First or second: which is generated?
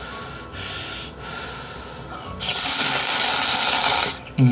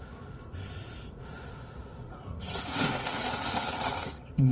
second